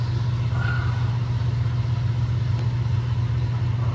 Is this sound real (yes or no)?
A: yes